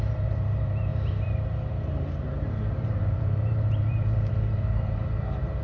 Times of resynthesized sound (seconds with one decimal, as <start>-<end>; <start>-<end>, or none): 0.0-5.6

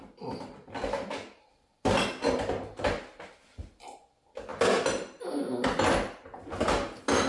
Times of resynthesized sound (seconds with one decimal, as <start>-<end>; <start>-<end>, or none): none

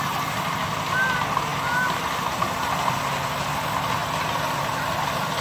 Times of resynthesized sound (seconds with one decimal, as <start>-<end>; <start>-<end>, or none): none

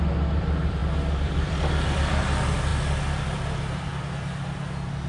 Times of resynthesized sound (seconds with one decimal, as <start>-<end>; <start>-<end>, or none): 0.0-2.7; 3.3-3.9

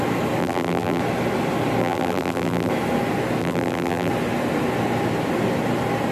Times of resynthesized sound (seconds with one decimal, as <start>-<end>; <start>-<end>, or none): 0.4-1.0; 1.8-2.7; 3.4-4.1

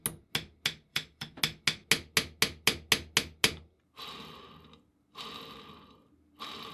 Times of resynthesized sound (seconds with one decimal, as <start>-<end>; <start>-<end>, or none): 0.9-1.4

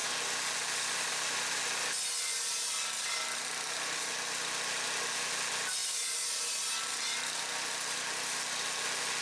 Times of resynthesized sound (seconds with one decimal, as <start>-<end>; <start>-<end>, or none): none

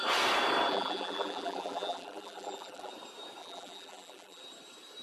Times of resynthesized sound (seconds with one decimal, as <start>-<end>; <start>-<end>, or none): 0.7-2.9; 3.4-4.4